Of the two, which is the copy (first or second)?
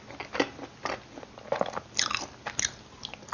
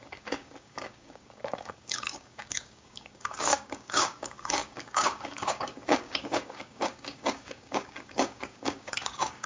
second